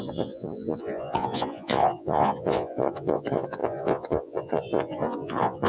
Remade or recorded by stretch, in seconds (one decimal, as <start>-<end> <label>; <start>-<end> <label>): 0.0-5.7 remade